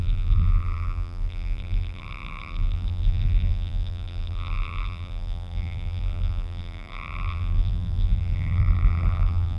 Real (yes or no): no